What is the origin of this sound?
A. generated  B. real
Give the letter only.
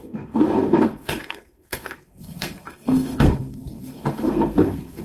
A